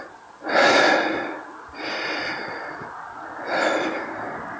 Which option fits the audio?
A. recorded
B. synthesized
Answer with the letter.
A